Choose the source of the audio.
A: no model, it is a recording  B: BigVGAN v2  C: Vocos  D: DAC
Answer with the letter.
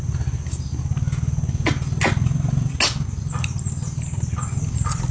A